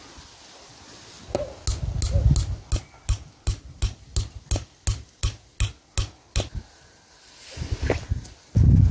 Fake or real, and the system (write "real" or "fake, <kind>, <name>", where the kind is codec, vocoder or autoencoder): real